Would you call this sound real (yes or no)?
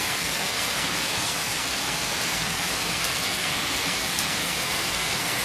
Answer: no